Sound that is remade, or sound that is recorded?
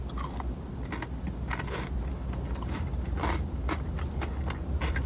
recorded